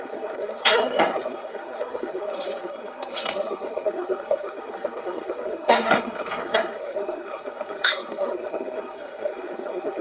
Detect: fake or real fake